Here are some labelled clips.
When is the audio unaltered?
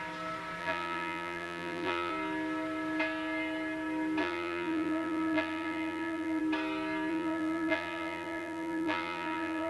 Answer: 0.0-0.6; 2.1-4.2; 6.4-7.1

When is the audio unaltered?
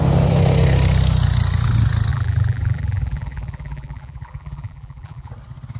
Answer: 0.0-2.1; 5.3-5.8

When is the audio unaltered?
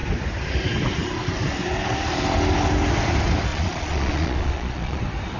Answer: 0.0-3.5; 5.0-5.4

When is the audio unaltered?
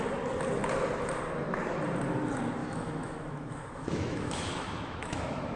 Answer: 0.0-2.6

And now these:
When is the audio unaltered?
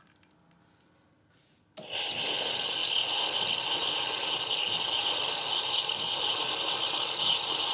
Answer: 0.0-7.7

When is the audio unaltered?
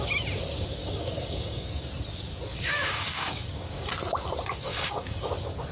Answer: 0.0-0.8; 1.9-2.5; 3.9-4.7; 5.3-5.7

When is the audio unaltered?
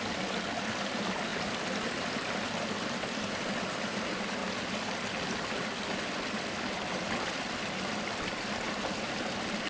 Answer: 0.0-9.7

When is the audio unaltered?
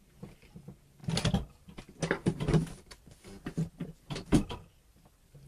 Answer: 0.0-2.2; 3.0-3.8; 4.4-5.5